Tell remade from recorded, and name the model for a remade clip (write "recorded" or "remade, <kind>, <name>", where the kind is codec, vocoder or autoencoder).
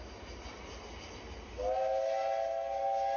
recorded